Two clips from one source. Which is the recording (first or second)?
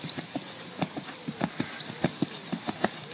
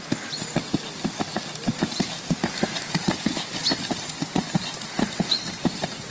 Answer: second